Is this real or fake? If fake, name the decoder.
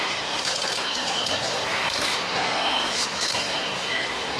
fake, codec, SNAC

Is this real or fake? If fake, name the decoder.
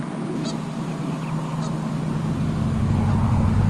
real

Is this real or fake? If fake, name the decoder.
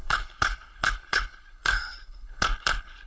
fake, codec, HILCodec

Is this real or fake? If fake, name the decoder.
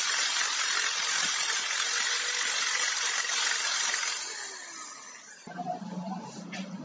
real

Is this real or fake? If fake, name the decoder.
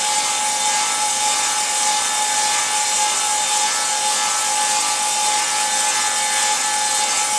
real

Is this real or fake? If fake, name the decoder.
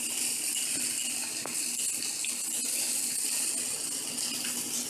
real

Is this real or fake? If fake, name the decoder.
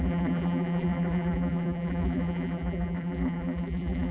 fake, vocoder, BigVGAN v2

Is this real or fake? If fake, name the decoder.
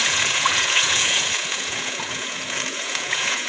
fake, vocoder, Vocos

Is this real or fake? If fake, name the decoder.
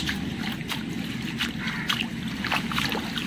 real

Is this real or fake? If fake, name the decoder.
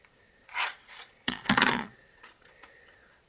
fake, vocoder, Vocos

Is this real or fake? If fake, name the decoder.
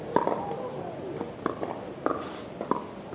real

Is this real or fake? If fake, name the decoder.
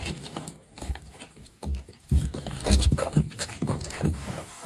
fake, codec, DAC